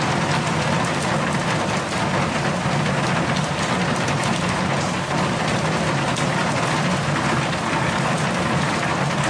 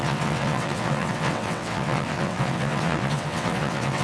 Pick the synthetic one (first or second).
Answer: second